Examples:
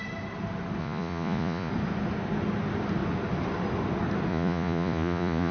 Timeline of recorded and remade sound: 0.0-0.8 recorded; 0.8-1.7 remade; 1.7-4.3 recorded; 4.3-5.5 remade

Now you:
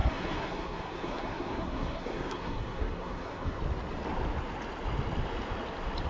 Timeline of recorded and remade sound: 0.0-3.6 remade; 3.6-6.1 recorded